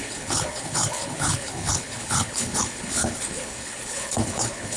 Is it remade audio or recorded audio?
remade